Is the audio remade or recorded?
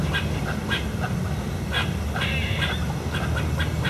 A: recorded